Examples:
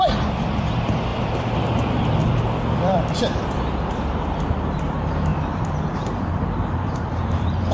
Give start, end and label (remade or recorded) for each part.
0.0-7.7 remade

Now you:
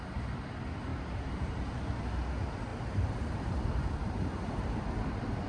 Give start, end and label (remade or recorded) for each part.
0.0-0.9 recorded; 0.9-1.6 remade; 1.6-2.7 recorded; 2.7-4.8 remade; 4.8-5.5 recorded

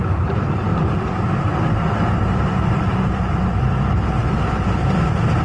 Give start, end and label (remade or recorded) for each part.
0.0-0.7 recorded; 0.7-3.2 remade; 3.2-4.2 recorded; 4.2-5.4 remade

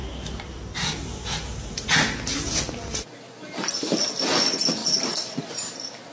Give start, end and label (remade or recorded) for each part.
0.0-0.5 remade; 0.5-6.1 recorded